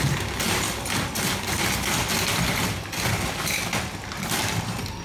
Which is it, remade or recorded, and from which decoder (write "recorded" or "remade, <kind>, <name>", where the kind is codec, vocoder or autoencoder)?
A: recorded